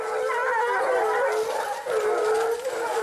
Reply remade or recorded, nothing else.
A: recorded